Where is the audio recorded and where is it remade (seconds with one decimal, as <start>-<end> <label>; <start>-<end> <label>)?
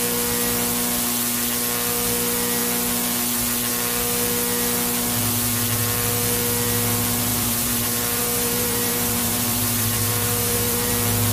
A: 0.0-7.3 recorded; 7.3-10.9 remade; 10.9-11.3 recorded